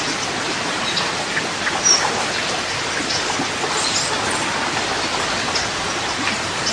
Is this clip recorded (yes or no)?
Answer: yes